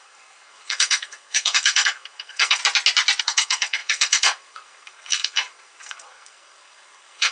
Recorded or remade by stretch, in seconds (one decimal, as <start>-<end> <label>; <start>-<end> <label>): 0.0-2.6 remade; 2.6-3.2 recorded; 3.2-7.3 remade